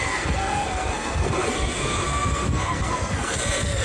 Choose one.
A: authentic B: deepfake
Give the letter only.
B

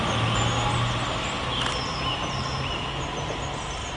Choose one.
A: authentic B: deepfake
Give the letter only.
A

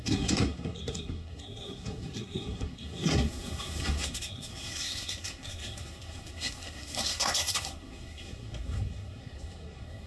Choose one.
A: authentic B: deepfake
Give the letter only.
B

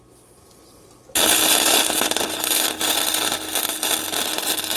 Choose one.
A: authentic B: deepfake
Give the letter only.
A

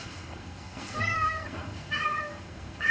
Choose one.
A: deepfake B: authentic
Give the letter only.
A